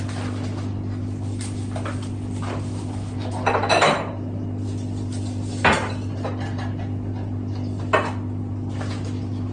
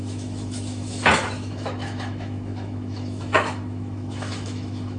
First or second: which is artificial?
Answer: second